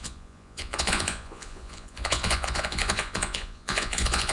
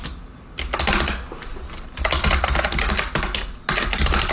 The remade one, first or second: first